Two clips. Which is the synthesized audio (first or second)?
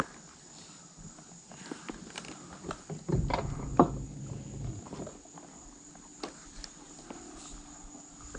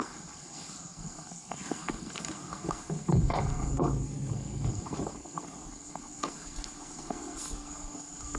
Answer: second